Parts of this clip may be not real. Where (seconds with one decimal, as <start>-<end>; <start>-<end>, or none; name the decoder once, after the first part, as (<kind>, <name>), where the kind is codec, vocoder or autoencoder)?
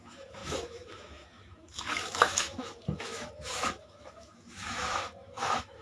0.0-5.8 (autoencoder, DAC-VAE)